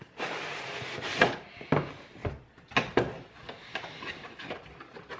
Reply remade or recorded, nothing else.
recorded